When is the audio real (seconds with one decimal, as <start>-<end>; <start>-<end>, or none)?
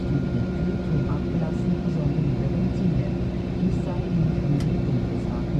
0.0-5.6